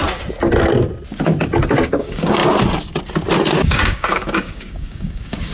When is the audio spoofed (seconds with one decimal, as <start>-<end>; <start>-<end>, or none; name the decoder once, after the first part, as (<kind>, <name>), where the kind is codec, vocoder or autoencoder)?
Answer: 1.6-2.4 (codec, DAC); 3.5-5.5